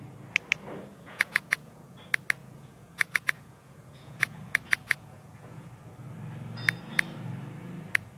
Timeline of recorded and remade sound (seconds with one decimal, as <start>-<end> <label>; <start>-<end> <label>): 0.0-0.9 recorded; 0.9-2.0 remade; 2.0-2.4 recorded; 2.4-5.7 remade; 5.7-8.2 recorded